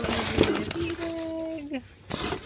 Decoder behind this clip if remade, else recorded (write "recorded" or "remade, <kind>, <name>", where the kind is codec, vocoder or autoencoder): recorded